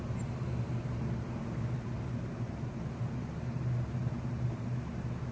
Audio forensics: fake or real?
real